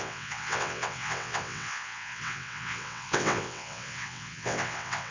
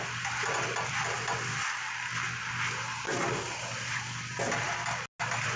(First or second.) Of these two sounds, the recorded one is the second